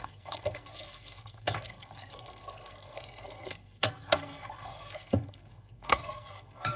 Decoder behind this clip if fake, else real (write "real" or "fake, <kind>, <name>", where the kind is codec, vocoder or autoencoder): fake, codec, SNAC